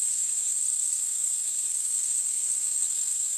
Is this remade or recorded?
remade